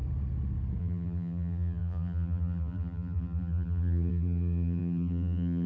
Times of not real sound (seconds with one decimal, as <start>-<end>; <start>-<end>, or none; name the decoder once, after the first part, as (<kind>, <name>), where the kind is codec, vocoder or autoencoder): 0.8-5.7 (vocoder, BigVGAN v2)